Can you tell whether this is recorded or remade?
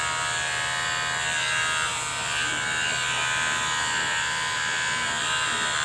remade